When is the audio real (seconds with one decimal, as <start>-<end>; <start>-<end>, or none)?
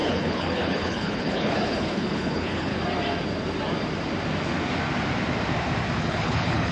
2.7-6.0